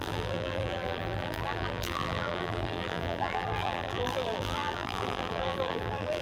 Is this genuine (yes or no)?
no